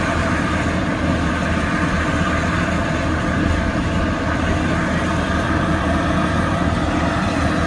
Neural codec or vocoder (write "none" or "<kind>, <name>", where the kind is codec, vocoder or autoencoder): none